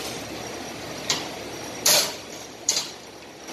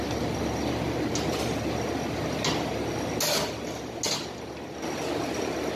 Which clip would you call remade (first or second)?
first